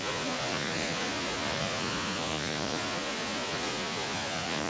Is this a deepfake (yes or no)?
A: yes